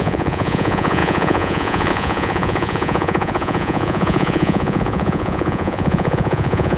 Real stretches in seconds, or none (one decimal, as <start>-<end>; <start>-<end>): none